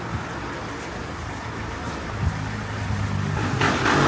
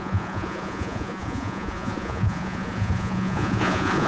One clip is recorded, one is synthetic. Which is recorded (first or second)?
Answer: first